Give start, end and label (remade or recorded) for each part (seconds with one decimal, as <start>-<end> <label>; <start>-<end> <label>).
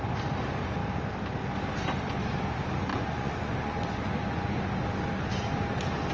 0.0-2.9 recorded; 2.9-4.6 remade; 4.6-6.1 recorded